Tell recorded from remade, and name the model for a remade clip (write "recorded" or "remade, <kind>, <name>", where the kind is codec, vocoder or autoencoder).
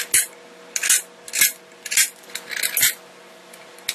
recorded